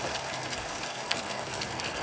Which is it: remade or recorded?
remade